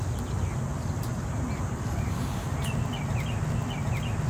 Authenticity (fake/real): real